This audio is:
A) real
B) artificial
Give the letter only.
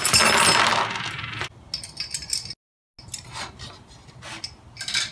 A